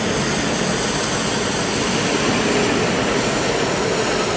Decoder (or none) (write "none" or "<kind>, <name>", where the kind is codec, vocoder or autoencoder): none